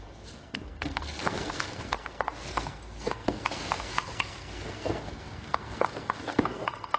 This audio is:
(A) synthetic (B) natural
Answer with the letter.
A